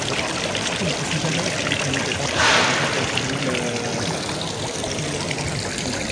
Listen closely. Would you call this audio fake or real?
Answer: real